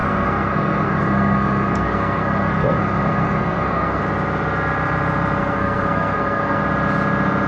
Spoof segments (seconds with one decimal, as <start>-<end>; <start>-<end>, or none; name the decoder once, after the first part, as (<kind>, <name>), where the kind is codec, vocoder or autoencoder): 0.0-4.0 (codec, SNAC); 5.4-6.6